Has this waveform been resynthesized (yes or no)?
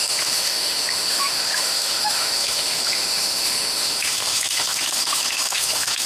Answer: yes